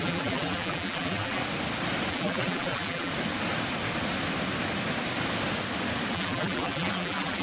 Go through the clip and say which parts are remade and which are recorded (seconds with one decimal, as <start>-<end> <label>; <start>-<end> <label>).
0.0-1.4 remade; 1.4-2.1 recorded; 2.1-3.1 remade; 3.1-6.1 recorded; 6.1-7.4 remade